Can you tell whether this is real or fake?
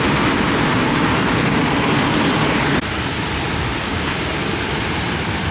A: real